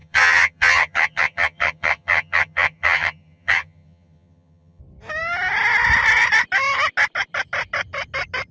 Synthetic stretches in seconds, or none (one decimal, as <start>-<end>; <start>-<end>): 0.0-4.8